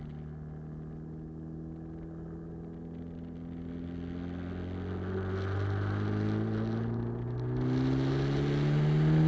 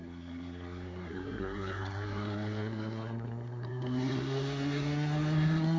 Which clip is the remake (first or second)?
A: second